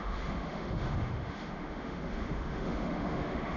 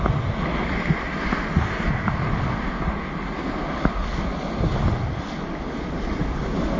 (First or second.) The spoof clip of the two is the first